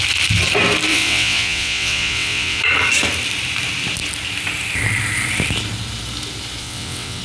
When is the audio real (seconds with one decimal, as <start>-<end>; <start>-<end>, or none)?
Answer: 0.0-0.9; 2.6-6.6